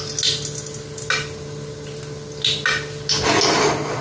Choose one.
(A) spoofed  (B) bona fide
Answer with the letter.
B